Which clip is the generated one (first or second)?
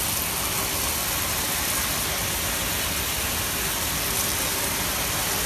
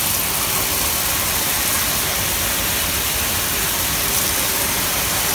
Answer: second